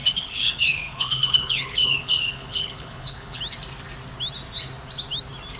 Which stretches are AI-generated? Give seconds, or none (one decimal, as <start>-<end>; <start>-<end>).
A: 0.0-3.4